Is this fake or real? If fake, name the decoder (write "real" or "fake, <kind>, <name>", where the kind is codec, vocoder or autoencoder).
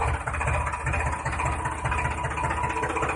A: real